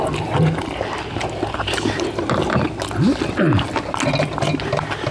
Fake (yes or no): no